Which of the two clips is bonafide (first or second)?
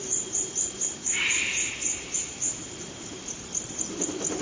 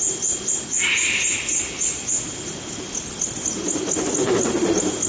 second